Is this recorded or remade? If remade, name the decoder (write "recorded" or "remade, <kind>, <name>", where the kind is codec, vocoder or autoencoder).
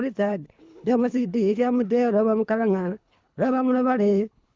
remade, codec, HILCodec